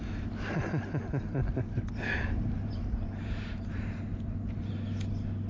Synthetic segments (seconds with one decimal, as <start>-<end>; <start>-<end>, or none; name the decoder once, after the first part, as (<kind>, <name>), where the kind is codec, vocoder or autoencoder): 1.4-4.7 (vocoder, BigVGAN v2)